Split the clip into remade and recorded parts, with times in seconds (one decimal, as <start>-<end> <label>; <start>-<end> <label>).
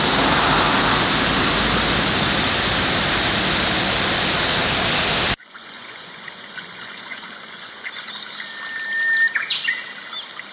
0.0-5.4 recorded; 5.4-8.1 remade; 8.1-10.5 recorded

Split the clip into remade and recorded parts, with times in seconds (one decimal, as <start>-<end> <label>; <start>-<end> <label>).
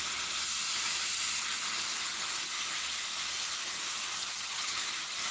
0.0-4.1 recorded; 4.1-4.8 remade; 4.8-5.3 recorded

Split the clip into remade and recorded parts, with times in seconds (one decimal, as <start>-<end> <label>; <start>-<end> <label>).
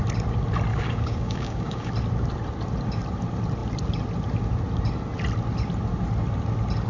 0.0-0.7 recorded; 0.7-1.9 remade; 1.9-6.9 recorded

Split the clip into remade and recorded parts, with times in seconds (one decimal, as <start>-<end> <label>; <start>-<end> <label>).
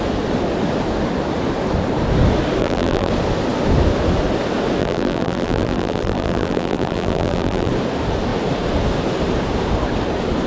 0.0-2.6 recorded; 2.6-3.1 remade; 3.1-4.8 recorded; 4.8-7.7 remade; 7.7-10.5 recorded